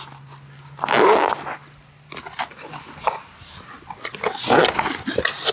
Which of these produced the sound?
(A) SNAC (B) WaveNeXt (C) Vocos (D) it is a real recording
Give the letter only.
D